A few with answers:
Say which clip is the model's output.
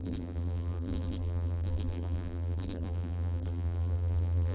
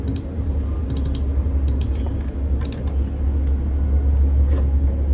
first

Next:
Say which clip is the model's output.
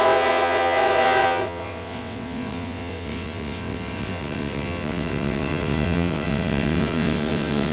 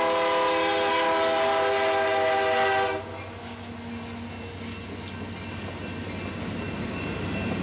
first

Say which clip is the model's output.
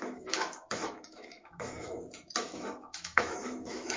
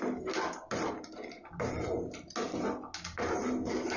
first